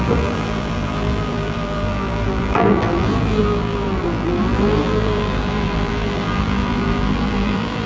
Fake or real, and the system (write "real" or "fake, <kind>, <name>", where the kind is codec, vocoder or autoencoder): fake, vocoder, BigVGAN v2